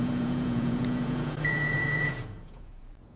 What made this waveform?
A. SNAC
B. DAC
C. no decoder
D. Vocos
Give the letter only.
D